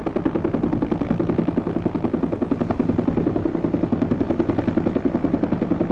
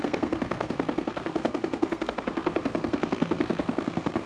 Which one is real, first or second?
first